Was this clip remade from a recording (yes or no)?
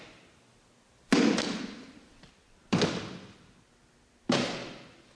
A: no